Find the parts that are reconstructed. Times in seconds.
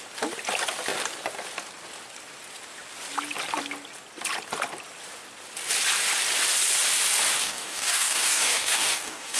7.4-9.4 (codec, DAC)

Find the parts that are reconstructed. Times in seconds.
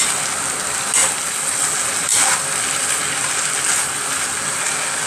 none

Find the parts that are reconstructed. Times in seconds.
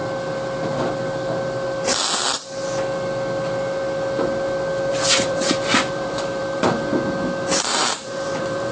4.9-6.9 (vocoder, BigVGAN v2); 7.6-8.7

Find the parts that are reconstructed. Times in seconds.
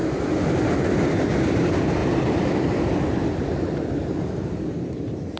0.9-5.4 (vocoder, BigVGAN v2)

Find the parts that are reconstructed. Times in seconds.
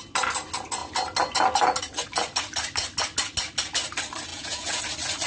4.3-4.8 (vocoder, Vocos)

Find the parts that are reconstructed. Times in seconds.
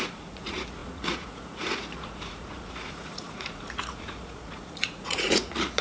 0.0-5.8 (vocoder, Vocos)